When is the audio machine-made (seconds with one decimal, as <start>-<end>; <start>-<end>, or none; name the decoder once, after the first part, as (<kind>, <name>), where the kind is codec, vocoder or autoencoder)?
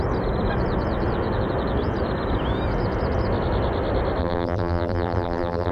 4.2-5.7 (vocoder, BigVGAN v2)